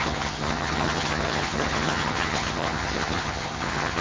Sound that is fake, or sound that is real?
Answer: fake